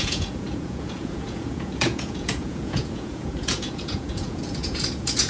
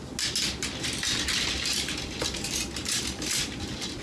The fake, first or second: first